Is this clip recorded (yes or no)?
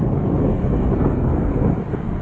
no